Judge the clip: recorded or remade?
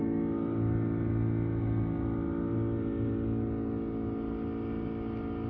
recorded